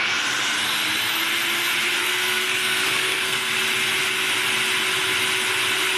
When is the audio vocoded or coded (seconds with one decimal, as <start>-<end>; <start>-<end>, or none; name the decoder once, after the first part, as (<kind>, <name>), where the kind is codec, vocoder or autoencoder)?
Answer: 2.0-3.5 (codec, SNAC)